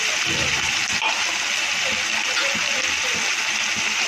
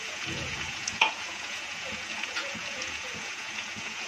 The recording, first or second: first